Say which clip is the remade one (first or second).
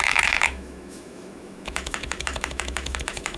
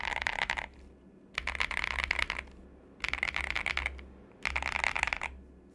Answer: first